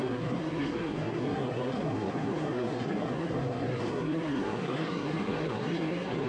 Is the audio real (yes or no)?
no